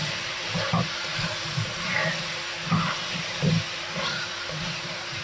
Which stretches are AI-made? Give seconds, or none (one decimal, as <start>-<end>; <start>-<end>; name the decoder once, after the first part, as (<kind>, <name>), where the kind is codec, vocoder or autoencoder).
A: 0.0-2.0 (vocoder, BigVGAN v2); 2.9-5.2